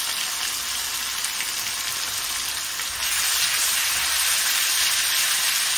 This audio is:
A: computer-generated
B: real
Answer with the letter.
B